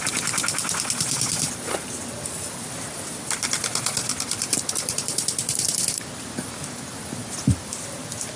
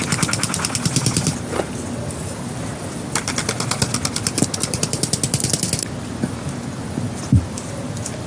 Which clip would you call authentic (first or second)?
second